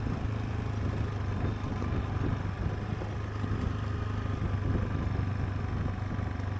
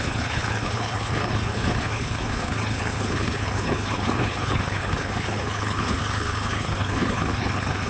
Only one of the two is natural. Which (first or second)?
first